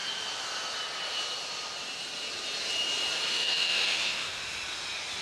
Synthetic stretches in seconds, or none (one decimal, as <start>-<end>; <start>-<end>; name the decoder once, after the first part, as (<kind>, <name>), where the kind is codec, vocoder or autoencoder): 3.3-4.4 (autoencoder, DAC-VAE)